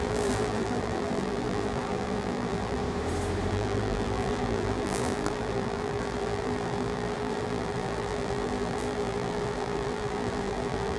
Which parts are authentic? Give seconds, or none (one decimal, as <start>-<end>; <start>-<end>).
2.8-3.5